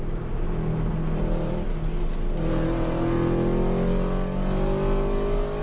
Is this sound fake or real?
real